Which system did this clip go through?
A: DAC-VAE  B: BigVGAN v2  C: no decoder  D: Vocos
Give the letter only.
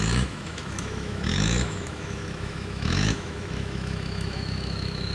A